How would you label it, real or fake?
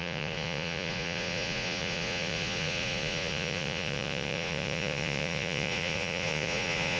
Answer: fake